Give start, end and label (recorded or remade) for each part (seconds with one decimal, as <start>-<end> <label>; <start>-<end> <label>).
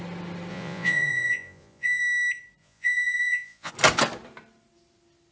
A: 0.0-0.5 recorded; 0.5-2.0 remade; 2.0-2.6 recorded; 2.6-3.7 remade; 3.7-5.3 recorded